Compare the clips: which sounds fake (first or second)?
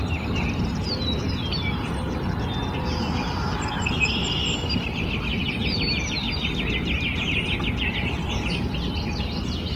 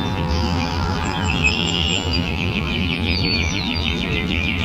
second